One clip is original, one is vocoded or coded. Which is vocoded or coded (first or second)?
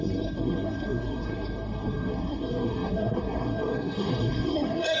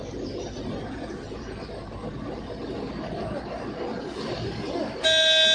first